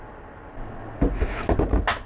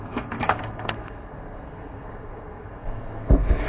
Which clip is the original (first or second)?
first